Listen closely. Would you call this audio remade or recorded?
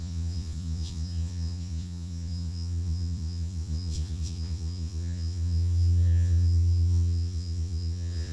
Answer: remade